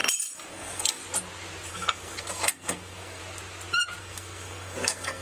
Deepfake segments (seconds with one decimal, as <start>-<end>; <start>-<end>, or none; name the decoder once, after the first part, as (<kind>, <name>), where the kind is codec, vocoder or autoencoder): 0.5-1.0 (codec, SNAC); 1.7-3.2; 4.0-5.2